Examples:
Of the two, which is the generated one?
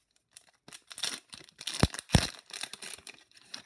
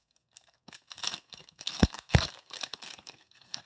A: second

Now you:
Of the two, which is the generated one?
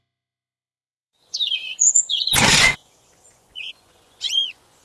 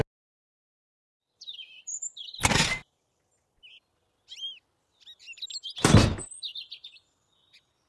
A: first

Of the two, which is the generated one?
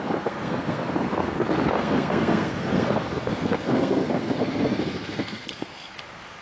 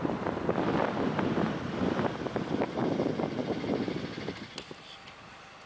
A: first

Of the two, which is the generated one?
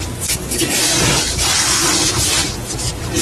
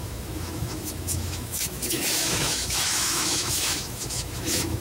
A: second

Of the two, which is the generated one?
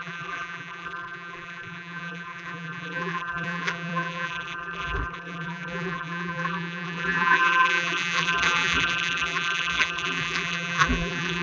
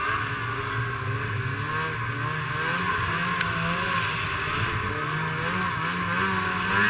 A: first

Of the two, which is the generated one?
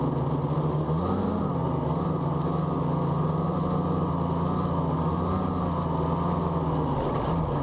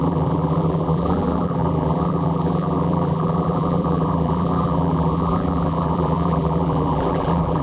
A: second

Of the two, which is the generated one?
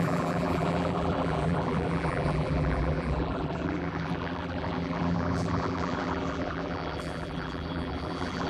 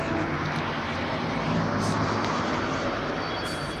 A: first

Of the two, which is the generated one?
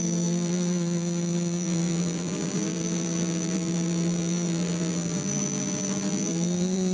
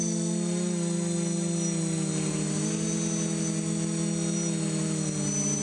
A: first